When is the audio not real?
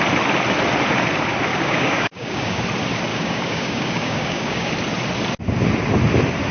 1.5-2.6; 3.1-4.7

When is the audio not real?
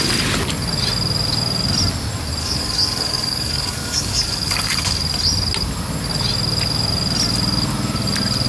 2.4-5.0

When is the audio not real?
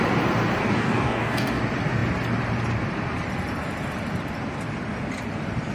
0.6-1.6